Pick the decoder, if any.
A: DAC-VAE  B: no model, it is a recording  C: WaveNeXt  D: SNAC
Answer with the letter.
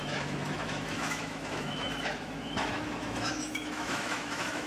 A